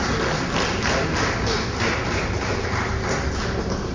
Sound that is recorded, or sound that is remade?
recorded